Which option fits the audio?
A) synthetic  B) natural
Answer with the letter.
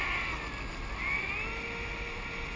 B